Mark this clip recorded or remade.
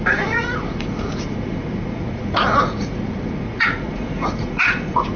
remade